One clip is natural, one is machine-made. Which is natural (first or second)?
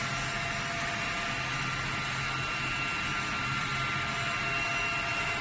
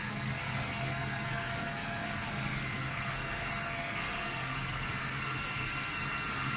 first